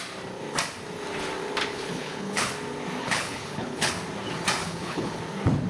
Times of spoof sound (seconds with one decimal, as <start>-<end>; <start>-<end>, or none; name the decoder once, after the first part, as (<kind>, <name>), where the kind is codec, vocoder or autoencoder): 1.7-2.5 (codec, HILCodec); 3.0-3.9; 4.6-5.2